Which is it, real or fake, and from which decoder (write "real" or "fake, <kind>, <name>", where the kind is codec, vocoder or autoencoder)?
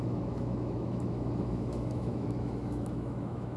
fake, autoencoder, DAC-VAE